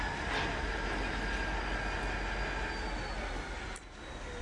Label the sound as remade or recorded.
recorded